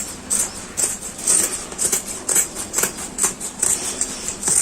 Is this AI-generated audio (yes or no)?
no